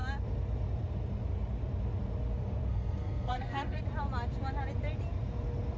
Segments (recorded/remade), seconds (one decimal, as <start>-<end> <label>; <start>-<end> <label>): 0.0-2.7 recorded; 2.7-3.8 remade; 3.8-5.8 recorded